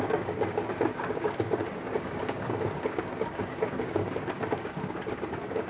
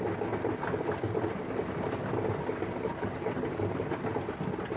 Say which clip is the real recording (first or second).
second